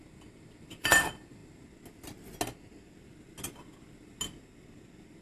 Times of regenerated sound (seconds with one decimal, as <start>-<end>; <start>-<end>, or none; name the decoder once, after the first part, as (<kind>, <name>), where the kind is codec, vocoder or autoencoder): none